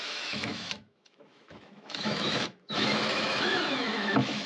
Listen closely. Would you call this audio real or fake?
fake